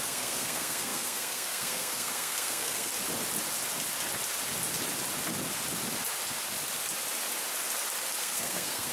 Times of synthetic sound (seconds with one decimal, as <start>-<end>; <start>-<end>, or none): 0.0-2.9; 8.2-8.9